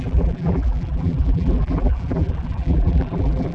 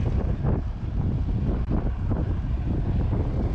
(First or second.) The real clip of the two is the second